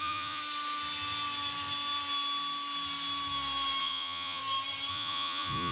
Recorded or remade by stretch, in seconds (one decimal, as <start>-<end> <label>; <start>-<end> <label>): 0.0-0.4 remade; 0.4-3.8 recorded; 3.8-4.4 remade; 4.4-4.9 recorded; 4.9-5.7 remade